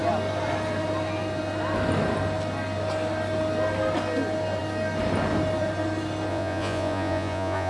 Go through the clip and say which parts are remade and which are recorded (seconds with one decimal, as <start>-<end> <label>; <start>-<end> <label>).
0.0-6.3 recorded; 6.3-7.7 remade